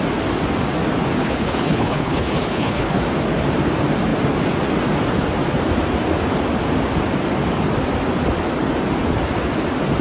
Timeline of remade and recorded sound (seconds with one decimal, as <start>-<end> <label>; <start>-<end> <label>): 0.0-1.2 recorded; 1.2-3.0 remade; 3.0-10.0 recorded